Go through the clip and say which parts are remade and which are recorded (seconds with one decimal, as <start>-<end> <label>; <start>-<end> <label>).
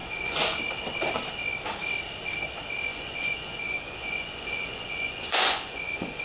0.0-0.6 remade; 0.6-2.9 recorded; 2.9-6.2 remade